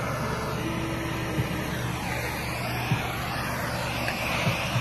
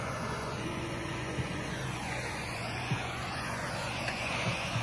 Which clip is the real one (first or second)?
first